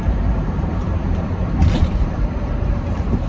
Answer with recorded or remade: remade